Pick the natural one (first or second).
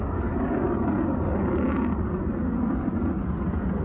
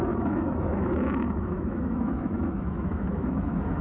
first